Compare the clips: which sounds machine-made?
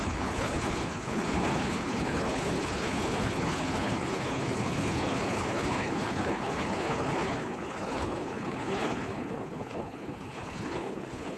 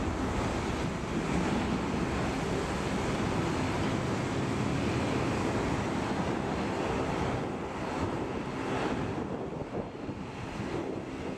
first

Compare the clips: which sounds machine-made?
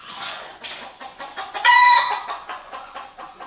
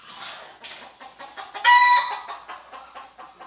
first